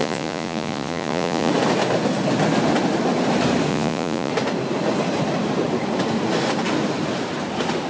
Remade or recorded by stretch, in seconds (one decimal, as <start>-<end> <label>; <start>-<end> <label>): 0.0-1.5 remade; 1.5-3.7 recorded; 3.7-4.3 remade; 4.3-7.9 recorded